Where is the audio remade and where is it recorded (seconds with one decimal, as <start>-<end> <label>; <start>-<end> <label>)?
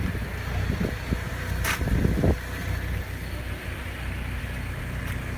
0.0-5.4 recorded